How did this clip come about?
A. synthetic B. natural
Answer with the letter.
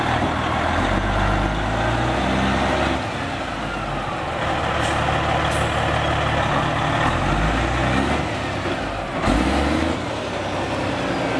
B